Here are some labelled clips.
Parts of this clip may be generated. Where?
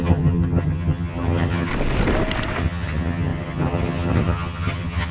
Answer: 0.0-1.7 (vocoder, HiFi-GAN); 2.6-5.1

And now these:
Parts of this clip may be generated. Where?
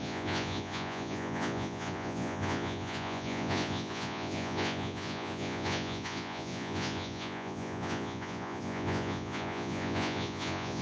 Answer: 0.0-10.8 (vocoder, Vocos)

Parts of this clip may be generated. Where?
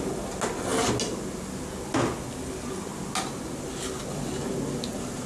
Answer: none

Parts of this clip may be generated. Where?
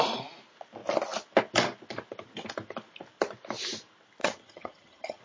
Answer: 4.2-5.2 (vocoder, HiFi-GAN)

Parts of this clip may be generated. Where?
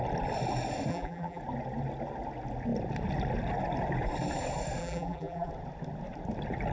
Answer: 0.9-1.4 (vocoder, BigVGAN v2); 4.8-5.5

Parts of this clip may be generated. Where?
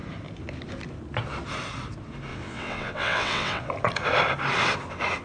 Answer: 2.3-3.7 (vocoder, WaveNeXt)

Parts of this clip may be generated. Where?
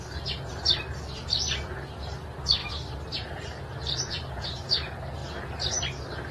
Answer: none